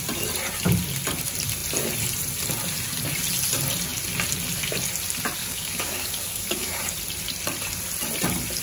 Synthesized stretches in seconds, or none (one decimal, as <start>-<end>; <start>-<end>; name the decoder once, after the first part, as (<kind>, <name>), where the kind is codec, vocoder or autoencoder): 5.4-6.8 (codec, DAC)